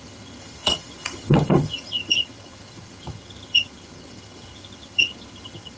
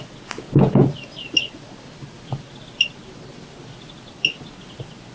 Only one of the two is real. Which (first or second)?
second